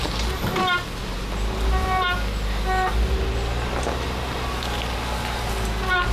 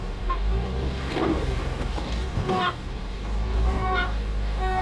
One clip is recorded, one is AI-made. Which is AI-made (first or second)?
second